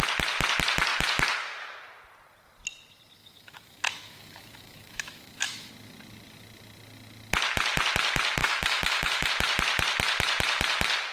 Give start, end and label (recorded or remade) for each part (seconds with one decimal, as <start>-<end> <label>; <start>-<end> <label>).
0.0-3.2 recorded; 3.2-5.7 remade; 5.7-8.4 recorded; 8.4-9.3 remade; 9.3-11.1 recorded